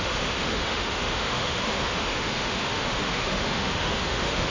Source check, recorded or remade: remade